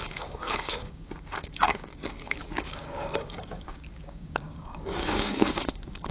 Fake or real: fake